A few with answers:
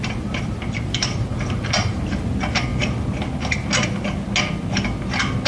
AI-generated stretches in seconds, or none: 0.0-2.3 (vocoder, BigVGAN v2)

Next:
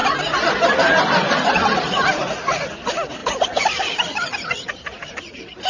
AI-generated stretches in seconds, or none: 3.2-5.7 (vocoder, BigVGAN v2)

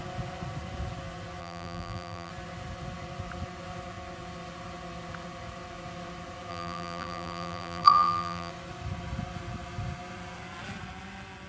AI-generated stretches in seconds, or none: 1.4-2.3 (vocoder, BigVGAN v2); 6.5-8.5

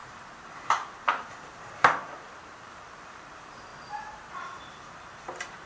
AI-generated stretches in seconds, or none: 0.0-3.7 (vocoder, BigVGAN v2); 4.3-5.7